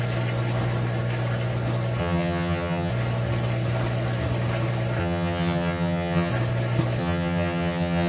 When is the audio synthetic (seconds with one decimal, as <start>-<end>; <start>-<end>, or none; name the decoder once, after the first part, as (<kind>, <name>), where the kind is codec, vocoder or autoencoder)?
2.0-2.9 (vocoder, HiFi-GAN); 5.0-6.3; 7.0-8.1